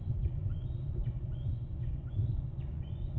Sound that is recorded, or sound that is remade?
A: remade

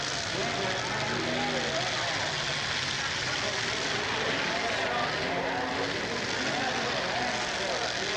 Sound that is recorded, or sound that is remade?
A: recorded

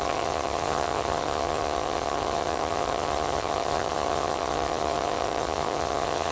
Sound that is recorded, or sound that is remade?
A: remade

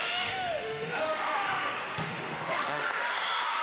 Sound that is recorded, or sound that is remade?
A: remade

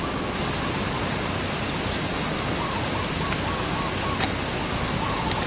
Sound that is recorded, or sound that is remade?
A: recorded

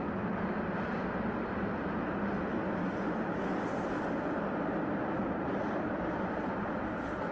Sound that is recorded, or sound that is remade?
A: recorded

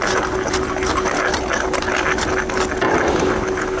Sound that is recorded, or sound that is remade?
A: recorded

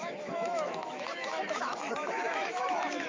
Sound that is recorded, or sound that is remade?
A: remade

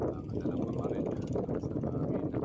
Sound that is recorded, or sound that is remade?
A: recorded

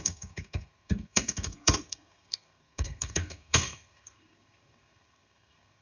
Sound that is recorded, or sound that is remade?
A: remade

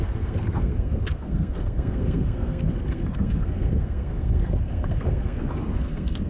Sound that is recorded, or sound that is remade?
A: remade